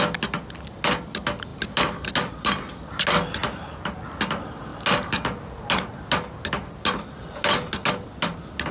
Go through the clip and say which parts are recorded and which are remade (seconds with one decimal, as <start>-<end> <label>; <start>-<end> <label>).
0.0-8.7 recorded